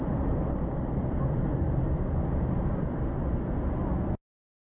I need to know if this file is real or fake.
real